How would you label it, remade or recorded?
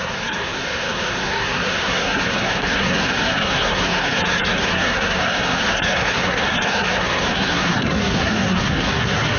remade